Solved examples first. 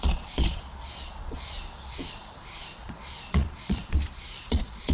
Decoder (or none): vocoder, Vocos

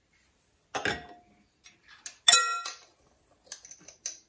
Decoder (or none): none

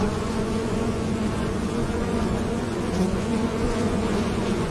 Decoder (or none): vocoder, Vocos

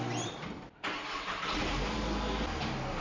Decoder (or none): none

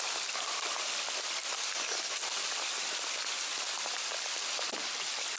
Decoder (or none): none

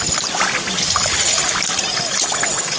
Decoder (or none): none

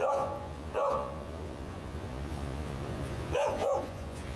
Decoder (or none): vocoder, Vocos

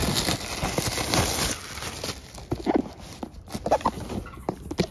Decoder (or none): none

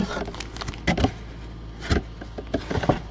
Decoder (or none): none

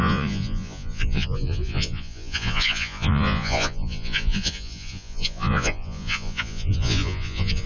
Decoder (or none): vocoder, Vocos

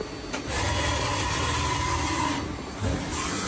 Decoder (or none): none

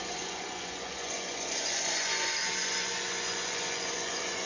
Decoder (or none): vocoder, Vocos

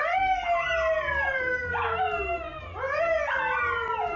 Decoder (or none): none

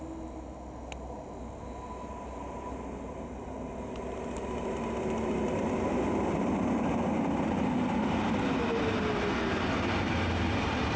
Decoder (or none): none